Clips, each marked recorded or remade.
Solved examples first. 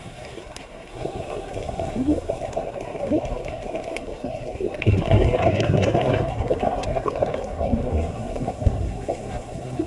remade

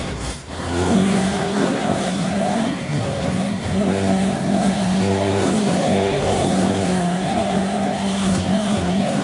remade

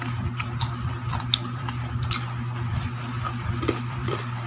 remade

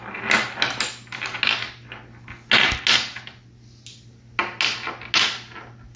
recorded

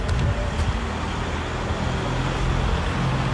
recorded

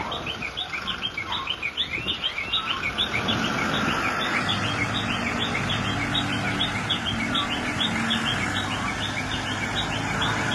recorded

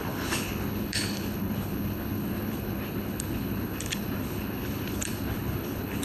remade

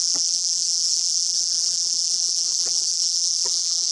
remade